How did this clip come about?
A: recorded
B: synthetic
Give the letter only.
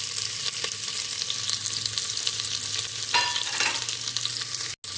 A